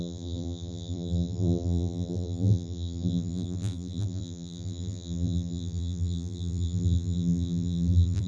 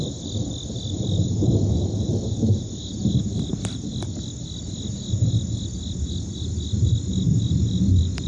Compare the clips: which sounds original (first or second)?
second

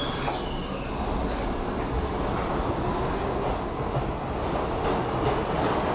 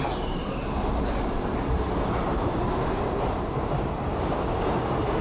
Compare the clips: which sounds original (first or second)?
first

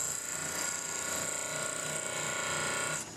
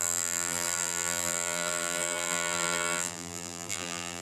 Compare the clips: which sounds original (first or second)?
first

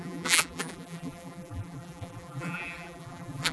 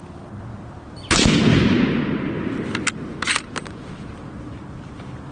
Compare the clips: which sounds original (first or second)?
second